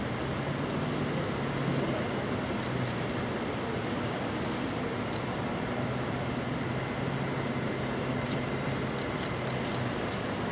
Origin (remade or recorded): recorded